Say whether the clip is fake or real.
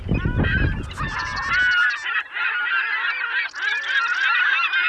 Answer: real